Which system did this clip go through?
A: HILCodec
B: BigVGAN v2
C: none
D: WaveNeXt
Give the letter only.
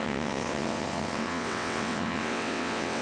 D